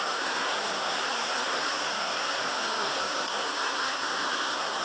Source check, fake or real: fake